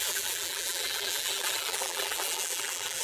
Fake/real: fake